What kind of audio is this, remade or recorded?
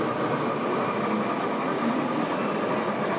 recorded